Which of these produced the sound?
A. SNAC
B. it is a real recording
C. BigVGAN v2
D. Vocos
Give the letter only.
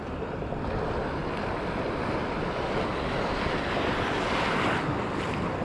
B